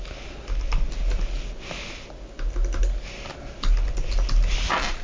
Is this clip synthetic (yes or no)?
no